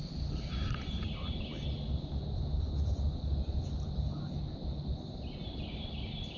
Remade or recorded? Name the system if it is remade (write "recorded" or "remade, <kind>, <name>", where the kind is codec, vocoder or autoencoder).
recorded